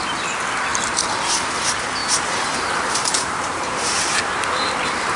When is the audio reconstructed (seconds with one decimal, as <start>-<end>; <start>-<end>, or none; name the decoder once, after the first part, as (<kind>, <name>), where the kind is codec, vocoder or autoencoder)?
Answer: 2.0-5.2 (vocoder, BigVGAN v2)